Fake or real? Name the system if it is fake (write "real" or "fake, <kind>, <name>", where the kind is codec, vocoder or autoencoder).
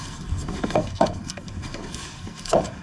fake, codec, SNAC